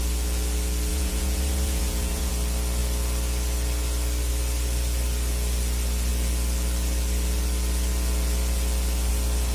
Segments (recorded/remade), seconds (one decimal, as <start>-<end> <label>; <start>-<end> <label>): 0.0-0.9 recorded; 0.9-2.3 remade; 2.3-9.5 recorded